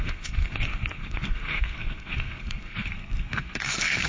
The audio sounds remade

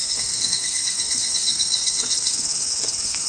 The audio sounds remade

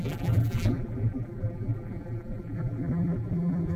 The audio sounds remade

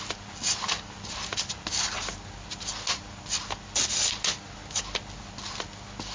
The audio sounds recorded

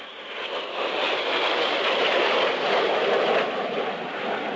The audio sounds recorded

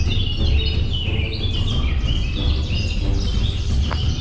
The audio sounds recorded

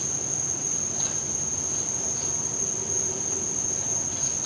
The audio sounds recorded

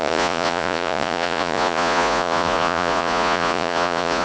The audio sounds remade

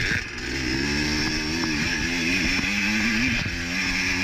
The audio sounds recorded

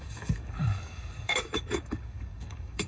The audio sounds remade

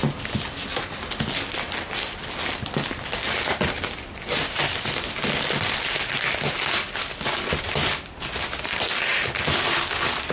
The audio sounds recorded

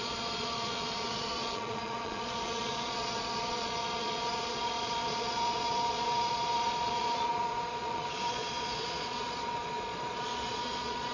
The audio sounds remade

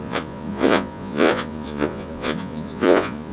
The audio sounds remade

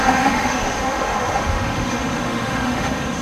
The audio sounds remade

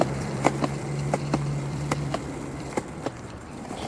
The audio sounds remade